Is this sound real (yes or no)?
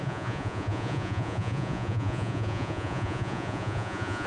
no